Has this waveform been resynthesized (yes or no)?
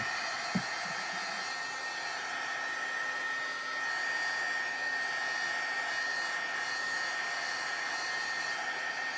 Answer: no